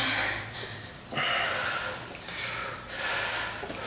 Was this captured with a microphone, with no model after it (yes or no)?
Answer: yes